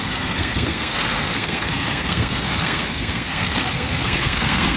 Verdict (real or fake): fake